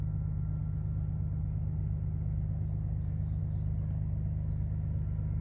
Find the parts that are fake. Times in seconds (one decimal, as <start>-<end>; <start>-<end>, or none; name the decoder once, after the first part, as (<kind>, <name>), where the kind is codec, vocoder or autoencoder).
none